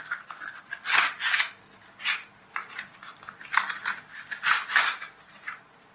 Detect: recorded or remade recorded